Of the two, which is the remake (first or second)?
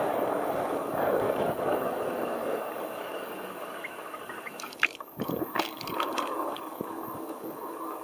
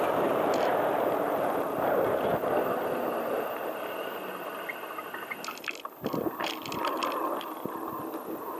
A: first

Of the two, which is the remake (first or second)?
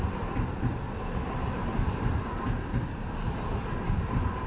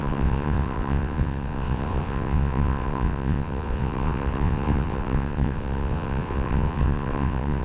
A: second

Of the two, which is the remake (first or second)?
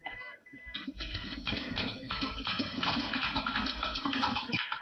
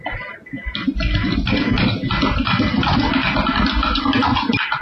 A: first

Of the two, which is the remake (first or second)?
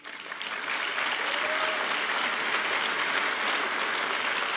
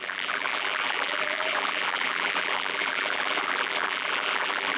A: second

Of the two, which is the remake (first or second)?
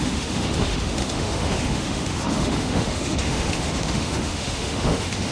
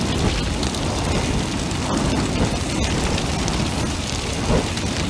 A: first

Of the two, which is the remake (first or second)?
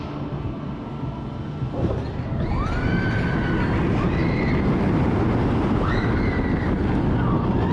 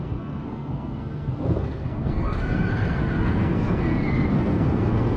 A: second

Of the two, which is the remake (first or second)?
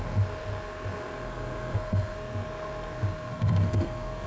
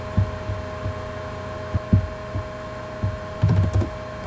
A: first